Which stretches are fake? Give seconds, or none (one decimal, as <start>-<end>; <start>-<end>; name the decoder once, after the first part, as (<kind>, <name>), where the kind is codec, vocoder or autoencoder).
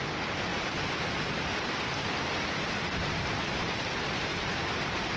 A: 0.5-3.6 (vocoder, BigVGAN v2); 4.3-5.2